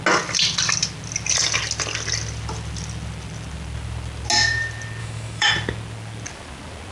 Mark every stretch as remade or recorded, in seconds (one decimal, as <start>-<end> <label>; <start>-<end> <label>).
0.0-5.0 recorded; 5.0-5.5 remade; 5.5-6.9 recorded